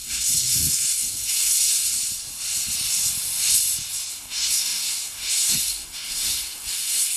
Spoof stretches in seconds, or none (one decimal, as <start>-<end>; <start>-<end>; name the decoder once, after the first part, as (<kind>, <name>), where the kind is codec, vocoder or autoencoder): 0.0-2.0 (codec, SNAC); 4.1-7.2